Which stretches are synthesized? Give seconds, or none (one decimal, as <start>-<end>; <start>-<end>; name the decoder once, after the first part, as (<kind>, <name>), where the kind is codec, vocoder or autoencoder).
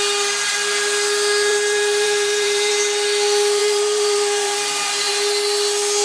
1.5-2.7 (vocoder, BigVGAN v2); 3.6-5.1